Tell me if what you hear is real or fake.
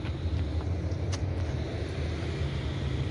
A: real